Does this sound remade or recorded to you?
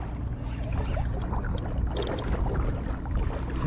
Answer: recorded